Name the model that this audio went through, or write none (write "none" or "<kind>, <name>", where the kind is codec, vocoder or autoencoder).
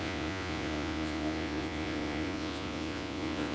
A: vocoder, Vocos